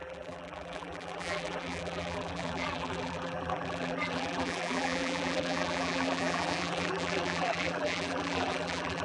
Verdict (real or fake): fake